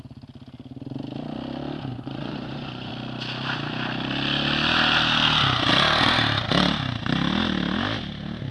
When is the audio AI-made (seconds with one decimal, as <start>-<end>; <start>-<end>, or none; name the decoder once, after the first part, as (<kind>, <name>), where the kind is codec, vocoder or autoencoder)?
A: 1.9-2.9 (vocoder, Vocos)